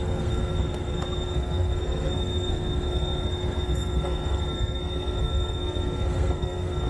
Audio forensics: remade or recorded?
remade